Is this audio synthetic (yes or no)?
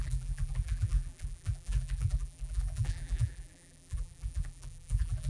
yes